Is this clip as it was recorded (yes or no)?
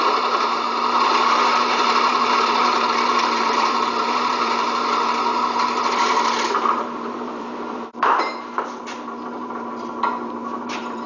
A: no